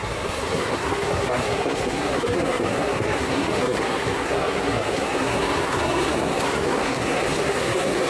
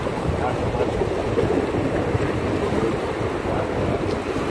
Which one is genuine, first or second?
second